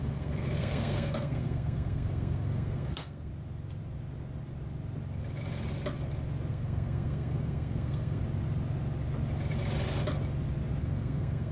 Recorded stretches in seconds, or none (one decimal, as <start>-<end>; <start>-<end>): 3.3-6.5; 8.2-10.8